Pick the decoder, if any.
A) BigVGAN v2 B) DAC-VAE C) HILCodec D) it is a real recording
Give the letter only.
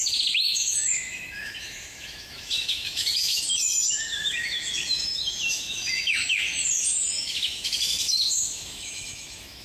B